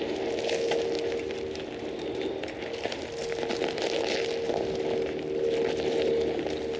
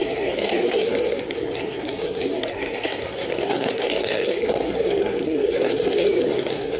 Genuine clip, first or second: first